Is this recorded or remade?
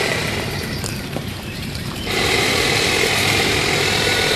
remade